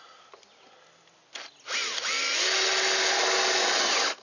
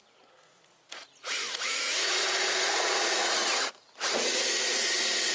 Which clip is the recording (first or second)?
first